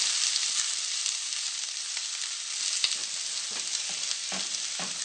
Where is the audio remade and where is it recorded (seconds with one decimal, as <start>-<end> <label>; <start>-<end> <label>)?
0.0-2.0 remade; 2.0-3.5 recorded; 3.5-5.0 remade